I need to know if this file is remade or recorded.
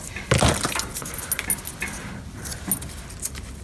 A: recorded